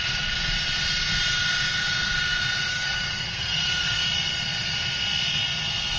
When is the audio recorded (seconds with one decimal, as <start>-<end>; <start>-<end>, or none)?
0.0-2.7; 4.0-6.0